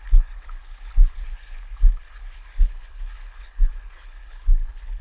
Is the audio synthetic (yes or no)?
yes